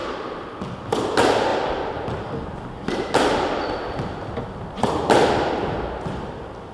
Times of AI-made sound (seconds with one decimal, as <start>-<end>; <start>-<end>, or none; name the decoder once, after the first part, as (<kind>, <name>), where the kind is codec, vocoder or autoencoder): none